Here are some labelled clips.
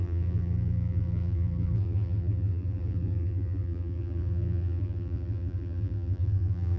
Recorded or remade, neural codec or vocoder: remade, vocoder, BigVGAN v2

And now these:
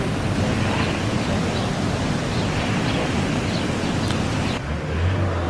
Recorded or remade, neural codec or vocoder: recorded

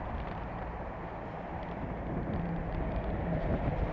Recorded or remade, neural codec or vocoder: remade, vocoder, BigVGAN v2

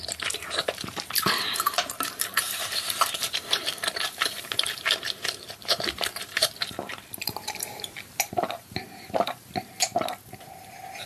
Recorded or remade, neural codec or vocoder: remade, vocoder, BigVGAN v2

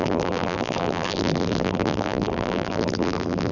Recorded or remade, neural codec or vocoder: remade, vocoder, BigVGAN v2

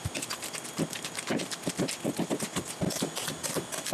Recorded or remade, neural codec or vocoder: recorded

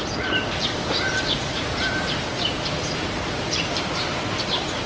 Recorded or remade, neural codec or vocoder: remade, vocoder, BigVGAN v2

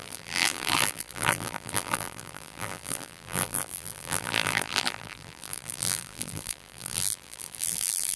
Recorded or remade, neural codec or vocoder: remade, vocoder, BigVGAN v2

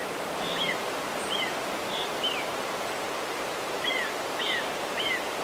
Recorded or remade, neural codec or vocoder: remade, vocoder, BigVGAN v2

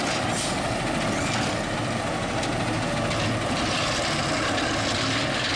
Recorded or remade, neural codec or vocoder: recorded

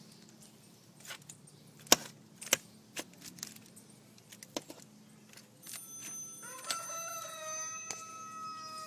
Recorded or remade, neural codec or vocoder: recorded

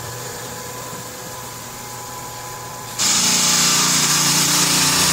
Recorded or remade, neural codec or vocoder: remade, vocoder, BigVGAN v2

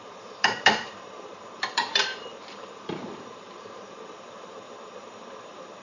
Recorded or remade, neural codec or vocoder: remade, vocoder, BigVGAN v2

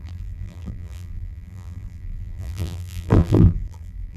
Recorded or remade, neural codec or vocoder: remade, vocoder, BigVGAN v2